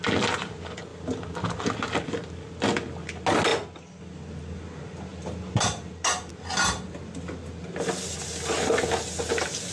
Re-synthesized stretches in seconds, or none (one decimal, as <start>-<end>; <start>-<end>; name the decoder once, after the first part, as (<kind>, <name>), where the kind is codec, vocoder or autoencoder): 3.5-4.0 (vocoder, BigVGAN v2); 5.1-6.3